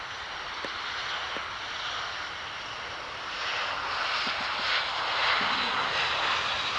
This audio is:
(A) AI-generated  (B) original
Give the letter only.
B